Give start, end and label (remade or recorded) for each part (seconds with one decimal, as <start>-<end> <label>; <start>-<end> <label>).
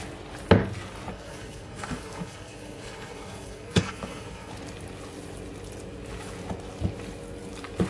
0.0-1.1 recorded; 1.1-4.5 remade; 4.5-7.9 recorded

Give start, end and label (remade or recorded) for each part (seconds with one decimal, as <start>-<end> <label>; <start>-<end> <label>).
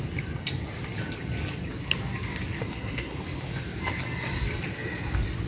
0.0-2.7 recorded; 2.7-3.2 remade; 3.2-5.5 recorded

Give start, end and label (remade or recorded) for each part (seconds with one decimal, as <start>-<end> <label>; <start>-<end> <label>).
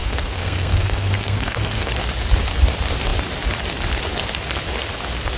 0.0-1.9 remade; 1.9-5.4 recorded